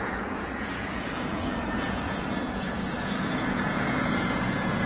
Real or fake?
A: fake